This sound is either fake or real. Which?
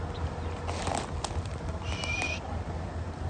real